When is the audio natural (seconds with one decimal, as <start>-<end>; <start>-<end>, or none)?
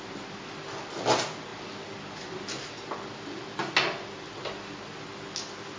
0.0-5.8